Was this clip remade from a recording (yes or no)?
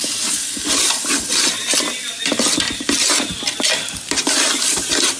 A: no